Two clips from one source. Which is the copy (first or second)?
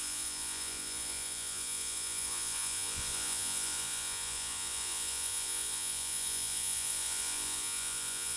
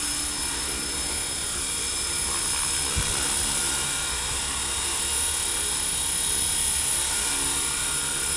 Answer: first